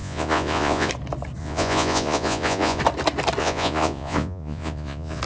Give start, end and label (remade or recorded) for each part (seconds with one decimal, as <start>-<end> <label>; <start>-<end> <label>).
0.0-0.9 remade; 0.9-1.4 recorded; 1.4-2.8 remade; 2.8-3.4 recorded; 3.4-5.2 remade